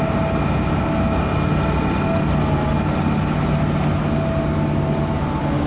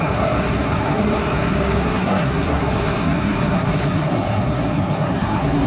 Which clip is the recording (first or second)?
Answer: first